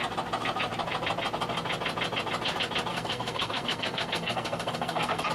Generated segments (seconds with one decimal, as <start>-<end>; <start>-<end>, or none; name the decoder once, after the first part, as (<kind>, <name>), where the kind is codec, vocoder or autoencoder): 2.9-5.3 (codec, SNAC)